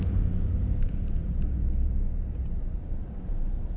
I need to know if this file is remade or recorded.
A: remade